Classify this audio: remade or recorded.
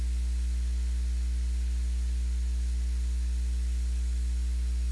recorded